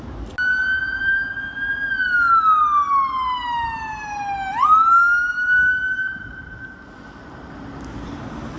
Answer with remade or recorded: recorded